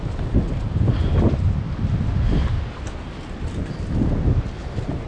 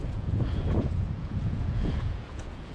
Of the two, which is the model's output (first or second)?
second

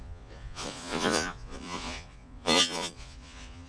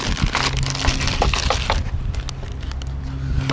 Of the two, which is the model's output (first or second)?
first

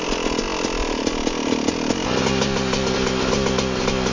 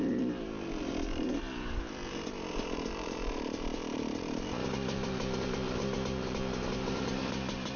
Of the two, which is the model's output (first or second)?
second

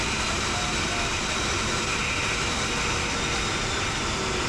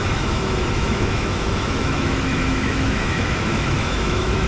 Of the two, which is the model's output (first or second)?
second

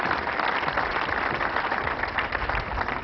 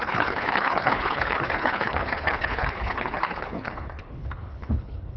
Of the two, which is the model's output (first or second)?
second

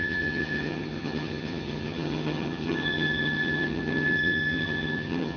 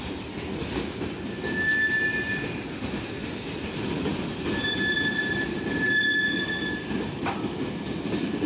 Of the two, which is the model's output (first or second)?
first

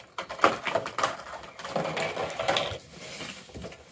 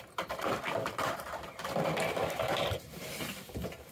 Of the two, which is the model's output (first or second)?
second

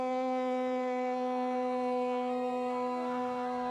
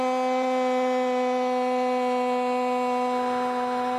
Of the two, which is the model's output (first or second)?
first